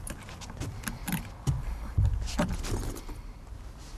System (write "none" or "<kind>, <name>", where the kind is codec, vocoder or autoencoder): vocoder, BigVGAN v2